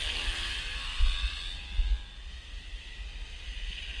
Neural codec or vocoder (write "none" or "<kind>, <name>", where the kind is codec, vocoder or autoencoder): none